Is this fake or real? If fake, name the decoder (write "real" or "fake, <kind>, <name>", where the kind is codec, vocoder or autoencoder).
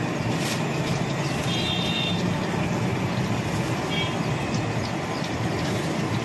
real